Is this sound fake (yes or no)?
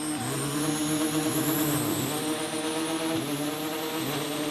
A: no